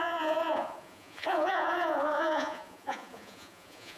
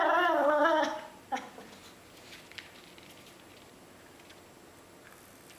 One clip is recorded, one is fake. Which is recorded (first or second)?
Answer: second